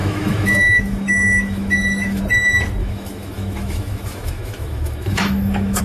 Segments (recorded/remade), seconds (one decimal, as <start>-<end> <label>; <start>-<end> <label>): 0.0-2.2 remade; 2.2-2.8 recorded; 2.8-5.8 remade